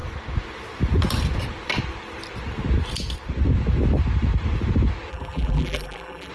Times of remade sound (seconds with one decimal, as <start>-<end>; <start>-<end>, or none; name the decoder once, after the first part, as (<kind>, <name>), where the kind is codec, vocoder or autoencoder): 5.1-6.3 (vocoder, BigVGAN v2)